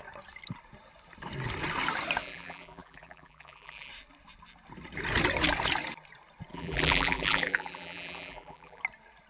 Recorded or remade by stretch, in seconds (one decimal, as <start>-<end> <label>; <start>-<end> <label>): 0.0-2.2 recorded; 2.2-3.9 remade; 3.9-6.5 recorded; 6.5-8.8 remade; 8.8-9.3 recorded